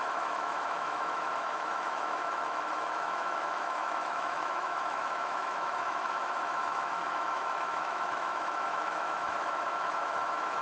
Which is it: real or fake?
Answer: fake